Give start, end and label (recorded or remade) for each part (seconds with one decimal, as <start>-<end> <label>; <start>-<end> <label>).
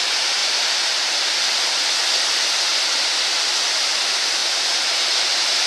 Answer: 0.0-0.4 recorded; 0.4-1.3 remade; 1.3-2.7 recorded; 2.7-3.2 remade; 3.2-4.4 recorded; 4.4-4.9 remade; 4.9-5.7 recorded